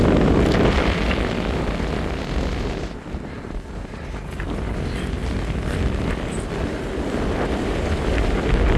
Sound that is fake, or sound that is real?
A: real